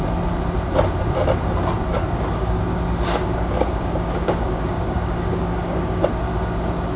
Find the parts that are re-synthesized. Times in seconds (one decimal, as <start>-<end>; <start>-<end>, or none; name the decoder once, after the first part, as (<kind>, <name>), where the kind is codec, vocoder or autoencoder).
1.9-6.0 (codec, DAC)